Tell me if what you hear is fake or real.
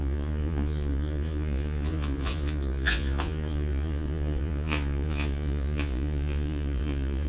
fake